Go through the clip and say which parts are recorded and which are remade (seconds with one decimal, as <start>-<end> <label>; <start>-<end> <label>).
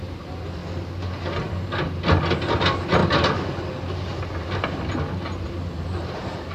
0.0-6.5 recorded